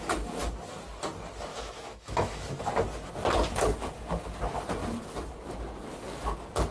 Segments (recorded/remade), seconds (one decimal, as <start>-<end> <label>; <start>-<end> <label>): 0.0-1.5 recorded; 1.5-2.6 remade; 2.6-6.7 recorded